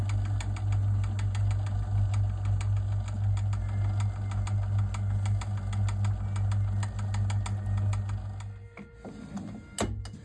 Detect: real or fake real